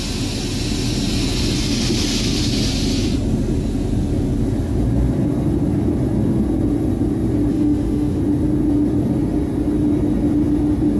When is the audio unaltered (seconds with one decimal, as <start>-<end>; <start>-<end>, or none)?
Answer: 0.0-7.5; 8.2-11.0